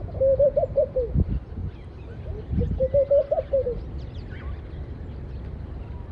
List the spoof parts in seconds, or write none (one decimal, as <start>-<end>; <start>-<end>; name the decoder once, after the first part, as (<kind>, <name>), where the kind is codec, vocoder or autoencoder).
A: none